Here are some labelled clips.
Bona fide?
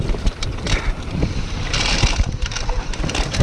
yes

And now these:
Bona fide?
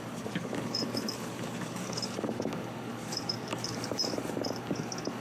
no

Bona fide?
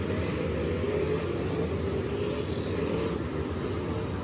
yes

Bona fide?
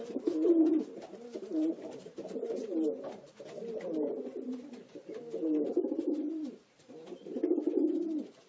no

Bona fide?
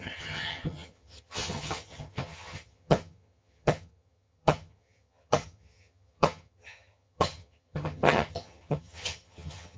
no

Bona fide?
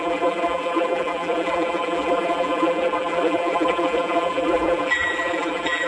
no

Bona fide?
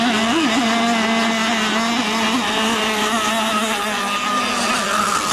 yes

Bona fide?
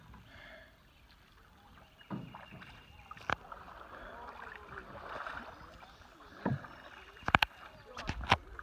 yes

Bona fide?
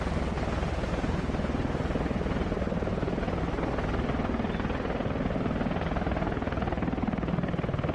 yes